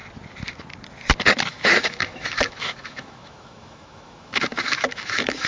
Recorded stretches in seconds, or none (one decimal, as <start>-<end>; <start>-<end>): 0.0-1.4